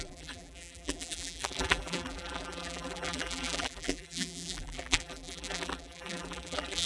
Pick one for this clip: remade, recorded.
remade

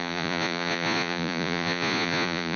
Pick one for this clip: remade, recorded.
remade